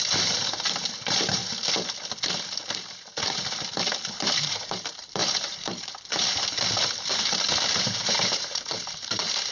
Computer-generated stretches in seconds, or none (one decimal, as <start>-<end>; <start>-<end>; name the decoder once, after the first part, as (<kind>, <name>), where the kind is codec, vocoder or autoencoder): 0.0-1.4 (vocoder, BigVGAN v2); 4.1-9.5